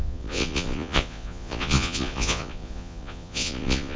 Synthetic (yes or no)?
yes